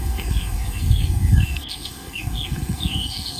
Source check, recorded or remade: remade